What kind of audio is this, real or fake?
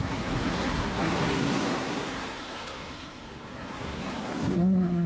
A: fake